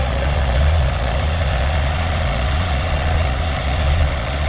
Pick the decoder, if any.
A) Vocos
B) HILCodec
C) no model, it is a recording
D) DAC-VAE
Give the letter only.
A